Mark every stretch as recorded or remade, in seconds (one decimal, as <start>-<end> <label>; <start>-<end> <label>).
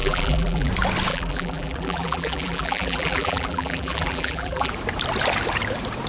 0.0-0.7 remade; 0.7-1.1 recorded; 1.1-4.7 remade; 4.7-6.1 recorded